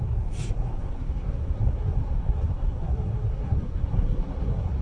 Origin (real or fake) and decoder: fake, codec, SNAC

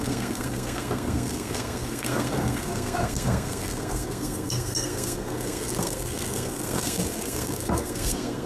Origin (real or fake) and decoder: fake, codec, SNAC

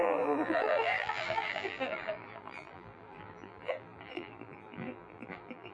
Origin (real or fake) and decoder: fake, vocoder, BigVGAN v2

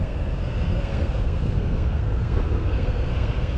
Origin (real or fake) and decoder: fake, codec, SNAC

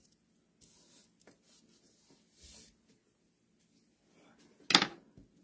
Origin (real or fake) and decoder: real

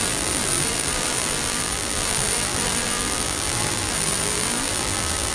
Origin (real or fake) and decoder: fake, vocoder, BigVGAN v2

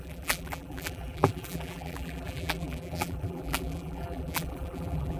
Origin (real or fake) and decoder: fake, vocoder, BigVGAN v2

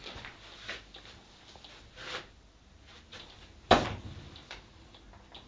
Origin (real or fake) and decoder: real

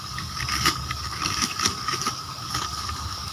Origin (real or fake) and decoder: fake, codec, DAC